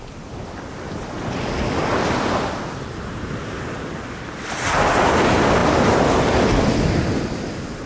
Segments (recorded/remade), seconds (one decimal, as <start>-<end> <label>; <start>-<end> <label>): 0.0-7.9 recorded